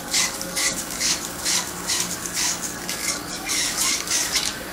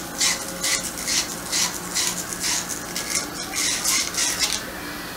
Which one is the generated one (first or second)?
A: first